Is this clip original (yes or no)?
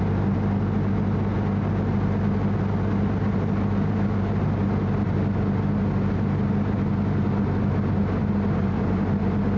yes